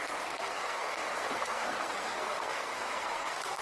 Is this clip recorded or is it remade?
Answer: remade